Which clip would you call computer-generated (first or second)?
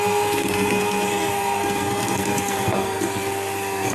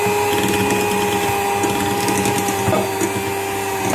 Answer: first